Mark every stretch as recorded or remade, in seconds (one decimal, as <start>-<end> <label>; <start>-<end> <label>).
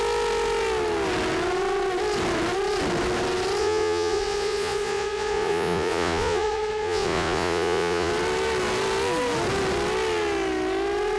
0.0-3.6 recorded; 3.6-8.1 remade; 8.1-11.2 recorded